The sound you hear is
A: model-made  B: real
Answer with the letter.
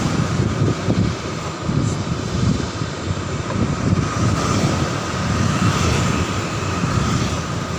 A